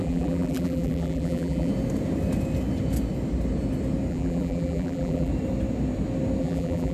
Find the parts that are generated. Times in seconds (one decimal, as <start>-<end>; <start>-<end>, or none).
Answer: 0.0-1.7; 4.1-5.3; 6.4-6.9